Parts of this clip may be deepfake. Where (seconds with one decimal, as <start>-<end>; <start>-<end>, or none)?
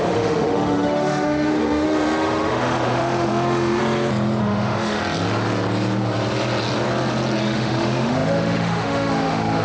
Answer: 0.0-3.8; 4.4-5.0; 7.4-9.6